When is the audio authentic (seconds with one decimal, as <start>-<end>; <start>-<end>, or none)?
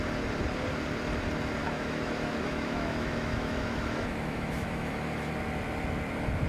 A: 0.0-1.6; 5.3-6.5